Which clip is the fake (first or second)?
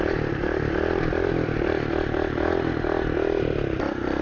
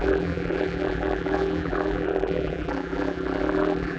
second